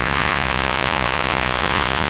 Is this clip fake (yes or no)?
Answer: yes